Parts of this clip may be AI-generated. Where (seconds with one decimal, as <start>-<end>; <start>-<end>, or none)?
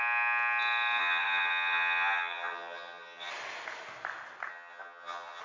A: 1.0-3.3; 4.5-5.4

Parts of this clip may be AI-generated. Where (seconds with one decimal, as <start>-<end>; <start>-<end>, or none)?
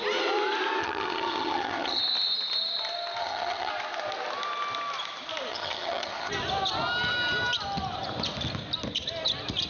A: 0.8-2.0; 3.2-3.7; 5.5-6.3